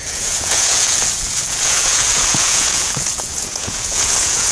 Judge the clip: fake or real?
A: fake